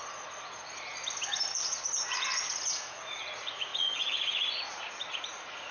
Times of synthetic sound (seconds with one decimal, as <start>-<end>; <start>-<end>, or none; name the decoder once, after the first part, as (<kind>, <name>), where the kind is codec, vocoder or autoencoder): 0.0-0.9 (vocoder, Vocos); 1.5-5.7